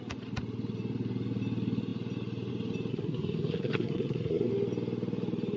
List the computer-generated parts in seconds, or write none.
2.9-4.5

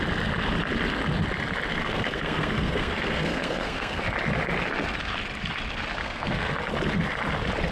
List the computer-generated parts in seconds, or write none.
1.8-4.0; 6.0-6.5